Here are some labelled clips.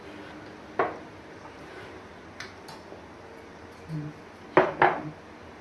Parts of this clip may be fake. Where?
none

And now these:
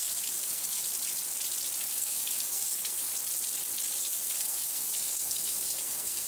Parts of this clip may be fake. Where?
0.0-0.8 (codec, SNAC); 1.9-3.1; 4.0-6.3

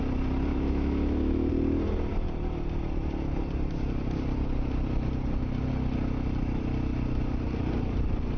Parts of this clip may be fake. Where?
0.5-1.5 (autoencoder, DAC-VAE)